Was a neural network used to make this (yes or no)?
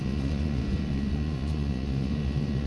yes